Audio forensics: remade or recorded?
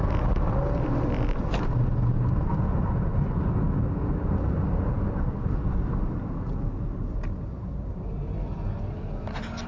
recorded